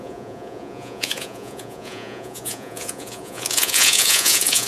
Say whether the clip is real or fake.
fake